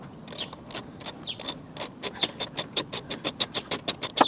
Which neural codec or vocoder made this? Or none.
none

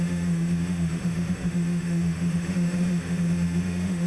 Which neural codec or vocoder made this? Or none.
autoencoder, DAC-VAE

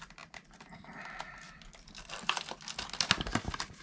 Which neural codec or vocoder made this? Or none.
none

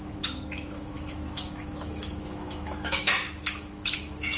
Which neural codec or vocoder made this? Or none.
autoencoder, DAC-VAE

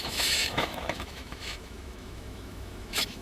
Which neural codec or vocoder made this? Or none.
autoencoder, DAC-VAE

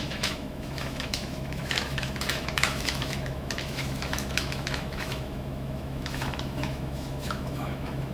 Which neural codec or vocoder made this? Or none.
autoencoder, DAC-VAE